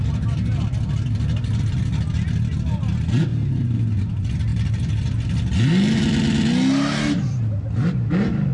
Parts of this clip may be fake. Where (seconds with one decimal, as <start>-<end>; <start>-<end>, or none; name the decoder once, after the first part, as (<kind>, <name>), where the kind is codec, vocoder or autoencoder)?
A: 4.5-5.5 (vocoder, BigVGAN v2)